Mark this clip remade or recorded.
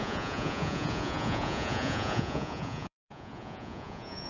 remade